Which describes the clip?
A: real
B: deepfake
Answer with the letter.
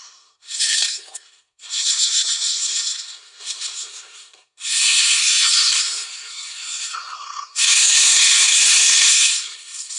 B